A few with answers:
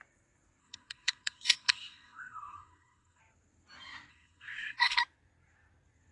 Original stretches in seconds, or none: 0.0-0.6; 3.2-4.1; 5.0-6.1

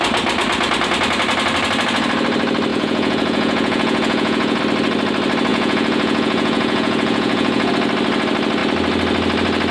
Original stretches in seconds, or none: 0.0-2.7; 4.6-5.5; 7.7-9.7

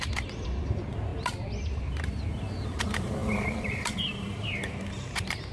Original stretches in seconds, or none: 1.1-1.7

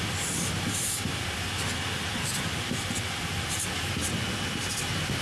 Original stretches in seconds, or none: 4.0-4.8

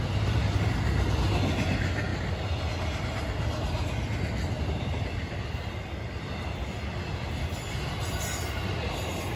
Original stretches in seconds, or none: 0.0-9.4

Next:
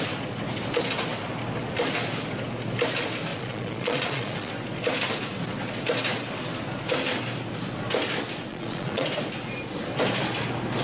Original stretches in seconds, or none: 0.0-3.3; 4.5-8.5; 9.1-10.8